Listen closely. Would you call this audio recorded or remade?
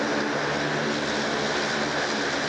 recorded